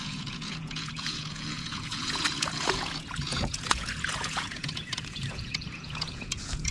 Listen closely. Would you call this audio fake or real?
fake